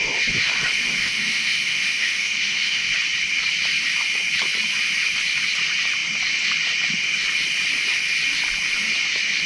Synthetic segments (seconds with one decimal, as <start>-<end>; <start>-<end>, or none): 1.0-2.9